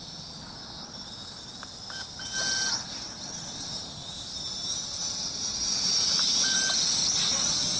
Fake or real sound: real